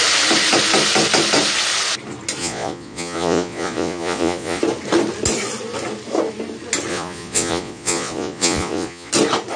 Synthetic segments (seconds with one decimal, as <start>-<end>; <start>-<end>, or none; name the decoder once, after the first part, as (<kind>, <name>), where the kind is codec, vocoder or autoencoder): 2.4-4.6 (vocoder, Vocos); 6.9-9.1